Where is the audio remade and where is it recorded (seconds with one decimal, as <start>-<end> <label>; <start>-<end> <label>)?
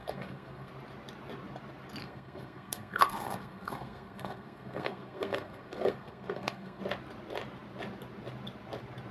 0.0-0.7 remade; 0.7-2.0 recorded; 2.0-6.8 remade; 6.8-9.1 recorded